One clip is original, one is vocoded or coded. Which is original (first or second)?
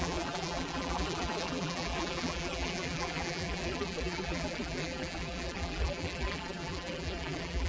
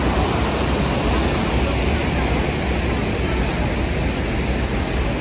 second